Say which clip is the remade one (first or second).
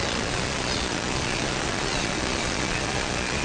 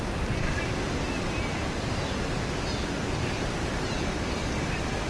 first